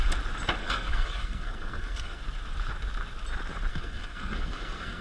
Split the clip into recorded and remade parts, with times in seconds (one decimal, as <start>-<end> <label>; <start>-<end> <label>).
0.0-0.6 recorded; 0.6-2.2 remade; 2.2-3.7 recorded; 3.7-5.0 remade